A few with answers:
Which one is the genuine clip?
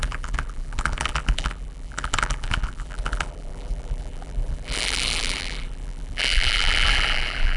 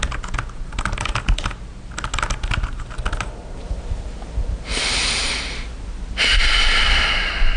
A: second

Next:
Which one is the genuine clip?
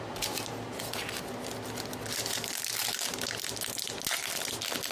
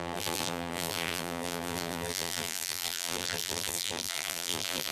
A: first